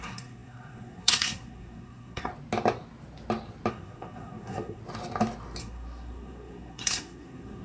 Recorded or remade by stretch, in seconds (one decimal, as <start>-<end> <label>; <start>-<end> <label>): 0.0-2.3 remade; 2.3-3.7 recorded; 3.7-4.8 remade; 4.8-5.6 recorded; 5.6-7.6 remade